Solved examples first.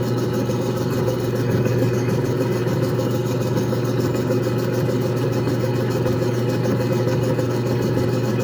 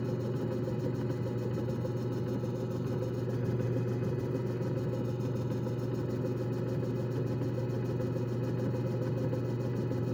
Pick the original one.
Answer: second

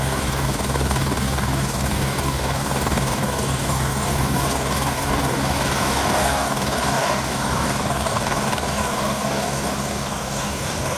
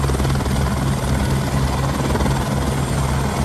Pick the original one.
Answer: second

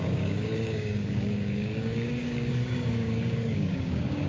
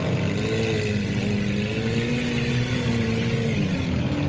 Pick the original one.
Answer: second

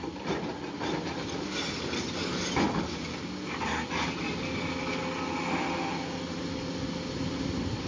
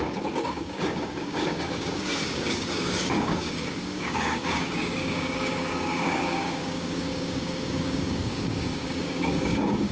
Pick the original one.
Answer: first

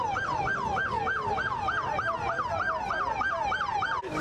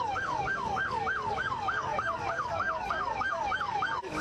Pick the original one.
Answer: first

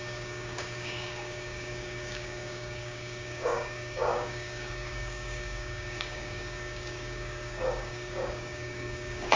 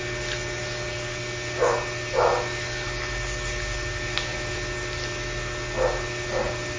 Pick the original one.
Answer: second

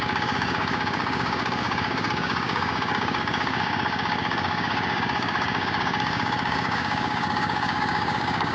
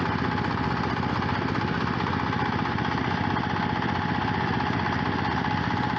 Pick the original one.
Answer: second